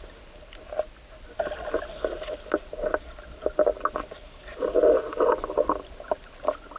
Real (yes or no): yes